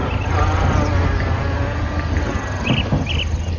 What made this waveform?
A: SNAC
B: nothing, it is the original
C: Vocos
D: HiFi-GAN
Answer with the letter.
B